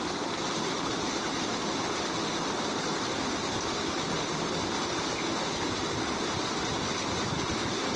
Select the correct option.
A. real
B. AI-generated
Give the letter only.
A